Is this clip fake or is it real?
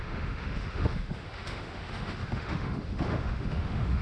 fake